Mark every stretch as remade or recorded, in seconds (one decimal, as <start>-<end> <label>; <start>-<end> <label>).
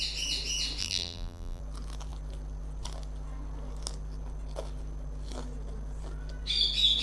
0.0-0.8 recorded; 0.8-1.6 remade; 1.6-7.0 recorded